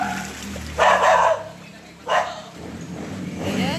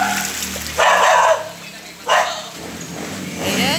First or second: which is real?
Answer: second